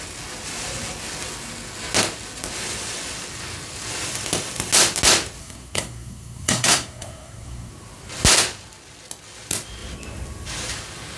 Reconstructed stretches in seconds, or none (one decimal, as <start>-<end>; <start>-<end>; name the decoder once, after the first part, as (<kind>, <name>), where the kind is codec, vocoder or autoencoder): 5.4-7.7 (codec, SNAC)